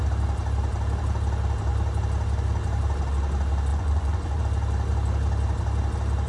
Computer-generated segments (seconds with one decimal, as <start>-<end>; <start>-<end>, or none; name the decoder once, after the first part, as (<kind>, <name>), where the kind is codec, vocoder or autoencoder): 3.7-4.4 (vocoder, Vocos)